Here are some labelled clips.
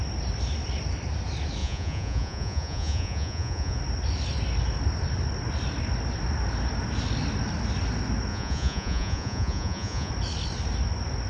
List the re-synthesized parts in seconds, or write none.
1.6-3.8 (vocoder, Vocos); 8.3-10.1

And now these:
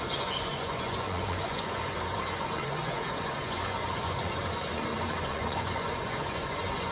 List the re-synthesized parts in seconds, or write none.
0.0-6.9 (vocoder, Vocos)

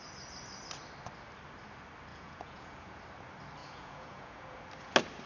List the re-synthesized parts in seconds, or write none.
2.1-3.0 (vocoder, Vocos); 3.6-4.6

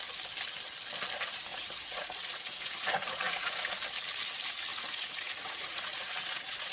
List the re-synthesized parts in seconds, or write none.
1.5-3.7 (vocoder, Vocos); 4.7-6.7